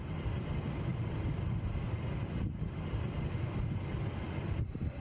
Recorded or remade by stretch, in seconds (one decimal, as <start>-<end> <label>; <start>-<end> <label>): 0.0-5.0 recorded